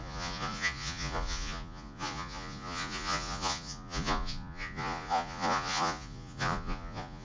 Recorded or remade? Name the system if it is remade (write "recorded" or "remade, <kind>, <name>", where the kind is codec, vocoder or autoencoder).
remade, vocoder, Vocos